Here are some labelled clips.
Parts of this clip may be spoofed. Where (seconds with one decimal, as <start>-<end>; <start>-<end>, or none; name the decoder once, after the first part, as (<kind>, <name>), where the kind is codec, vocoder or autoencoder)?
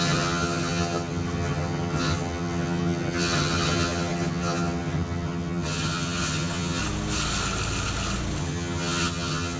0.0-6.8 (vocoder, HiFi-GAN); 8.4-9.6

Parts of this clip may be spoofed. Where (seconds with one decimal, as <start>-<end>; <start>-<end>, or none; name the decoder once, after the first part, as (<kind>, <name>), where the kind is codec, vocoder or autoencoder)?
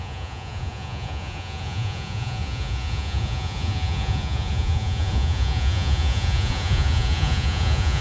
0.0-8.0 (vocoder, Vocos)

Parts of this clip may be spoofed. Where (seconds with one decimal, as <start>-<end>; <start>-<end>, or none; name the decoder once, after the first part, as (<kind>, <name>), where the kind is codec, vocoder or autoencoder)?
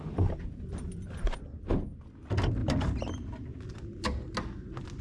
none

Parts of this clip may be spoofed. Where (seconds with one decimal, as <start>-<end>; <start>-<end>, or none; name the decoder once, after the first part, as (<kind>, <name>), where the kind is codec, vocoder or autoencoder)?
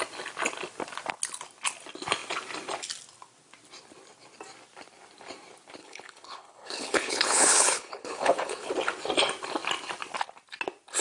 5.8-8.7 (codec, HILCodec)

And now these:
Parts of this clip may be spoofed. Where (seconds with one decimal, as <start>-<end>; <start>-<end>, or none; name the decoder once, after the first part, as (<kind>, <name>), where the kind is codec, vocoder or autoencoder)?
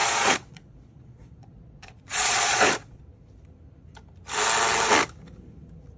0.0-3.0 (vocoder, Vocos)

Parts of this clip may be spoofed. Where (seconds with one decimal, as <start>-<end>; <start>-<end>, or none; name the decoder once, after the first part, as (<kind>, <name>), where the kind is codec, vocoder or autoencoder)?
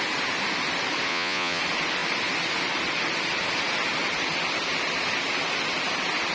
1.1-1.6 (vocoder, Vocos)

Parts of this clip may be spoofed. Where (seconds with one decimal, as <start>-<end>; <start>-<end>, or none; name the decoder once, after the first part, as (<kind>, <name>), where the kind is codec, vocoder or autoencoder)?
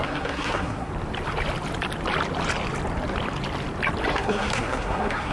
0.0-0.9 (codec, SNAC); 4.1-5.3